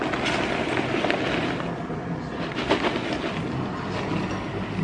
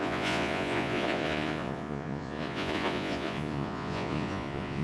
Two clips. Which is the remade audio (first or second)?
second